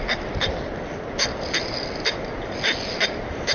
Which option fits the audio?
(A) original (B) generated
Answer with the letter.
A